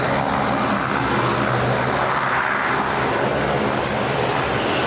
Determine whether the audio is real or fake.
real